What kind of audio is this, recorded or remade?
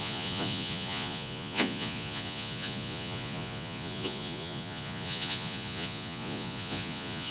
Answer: remade